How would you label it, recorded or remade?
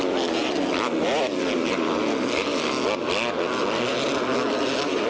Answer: remade